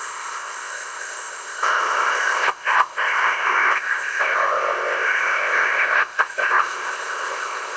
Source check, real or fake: fake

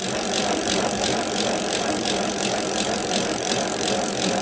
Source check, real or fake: fake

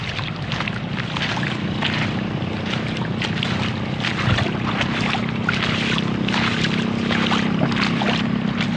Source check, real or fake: real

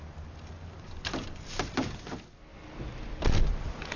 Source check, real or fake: real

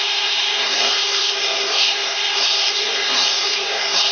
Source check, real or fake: fake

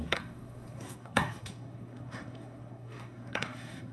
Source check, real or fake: fake